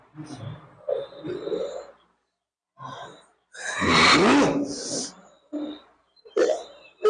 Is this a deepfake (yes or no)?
no